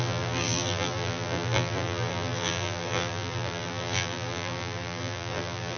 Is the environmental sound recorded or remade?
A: remade